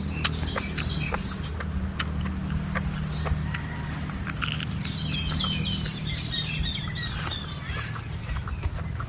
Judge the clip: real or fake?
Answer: real